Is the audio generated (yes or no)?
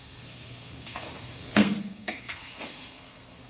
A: yes